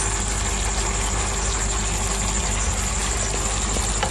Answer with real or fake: real